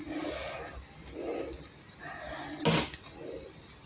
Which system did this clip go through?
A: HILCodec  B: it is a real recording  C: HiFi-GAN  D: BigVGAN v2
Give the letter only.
B